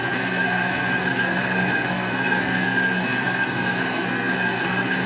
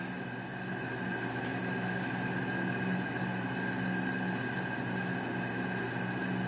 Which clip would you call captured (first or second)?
second